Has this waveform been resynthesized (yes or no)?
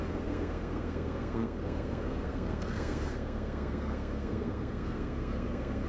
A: yes